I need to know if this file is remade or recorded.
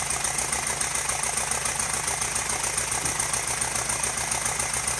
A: recorded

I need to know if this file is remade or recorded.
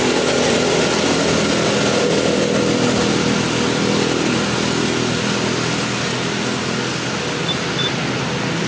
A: recorded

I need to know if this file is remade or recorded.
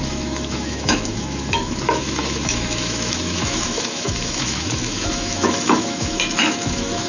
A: remade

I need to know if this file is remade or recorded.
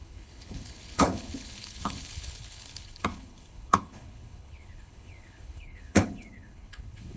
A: remade